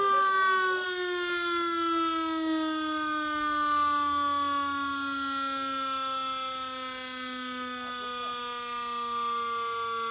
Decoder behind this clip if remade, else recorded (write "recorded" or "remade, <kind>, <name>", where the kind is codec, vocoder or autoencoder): recorded